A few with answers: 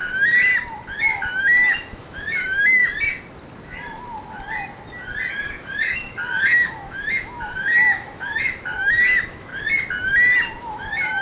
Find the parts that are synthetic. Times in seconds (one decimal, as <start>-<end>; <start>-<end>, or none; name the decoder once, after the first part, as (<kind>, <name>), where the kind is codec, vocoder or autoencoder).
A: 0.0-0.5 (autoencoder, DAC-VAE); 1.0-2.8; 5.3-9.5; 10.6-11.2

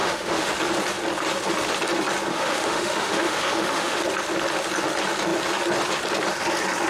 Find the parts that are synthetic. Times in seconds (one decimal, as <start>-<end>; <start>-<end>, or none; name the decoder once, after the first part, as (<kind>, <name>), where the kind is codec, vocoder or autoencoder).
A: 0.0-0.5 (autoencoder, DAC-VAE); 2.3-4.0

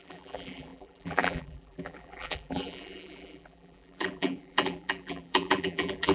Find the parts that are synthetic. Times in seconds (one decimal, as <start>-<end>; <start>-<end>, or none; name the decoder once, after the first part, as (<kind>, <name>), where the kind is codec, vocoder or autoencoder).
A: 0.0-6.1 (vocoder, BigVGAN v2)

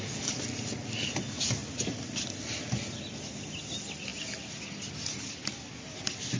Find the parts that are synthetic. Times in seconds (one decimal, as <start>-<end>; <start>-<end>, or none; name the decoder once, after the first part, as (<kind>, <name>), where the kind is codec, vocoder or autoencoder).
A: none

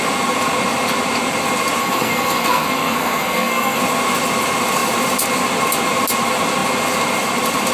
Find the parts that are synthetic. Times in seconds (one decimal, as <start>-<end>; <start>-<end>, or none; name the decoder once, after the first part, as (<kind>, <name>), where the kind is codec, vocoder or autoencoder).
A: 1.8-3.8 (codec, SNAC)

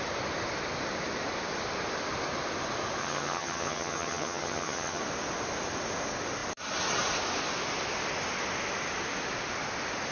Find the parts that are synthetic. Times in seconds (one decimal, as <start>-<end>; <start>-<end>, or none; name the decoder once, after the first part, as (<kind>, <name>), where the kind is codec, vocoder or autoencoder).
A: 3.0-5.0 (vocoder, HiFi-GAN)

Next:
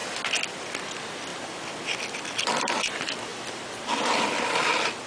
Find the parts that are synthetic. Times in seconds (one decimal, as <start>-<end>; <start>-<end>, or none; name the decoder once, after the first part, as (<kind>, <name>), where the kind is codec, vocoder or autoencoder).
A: 0.5-5.1 (vocoder, BigVGAN v2)

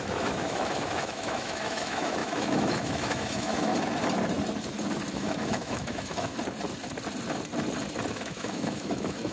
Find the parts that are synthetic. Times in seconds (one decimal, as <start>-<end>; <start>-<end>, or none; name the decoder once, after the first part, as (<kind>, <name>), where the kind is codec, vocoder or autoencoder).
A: 0.0-3.7 (autoencoder, DAC-VAE); 5.1-6.3; 8.1-9.3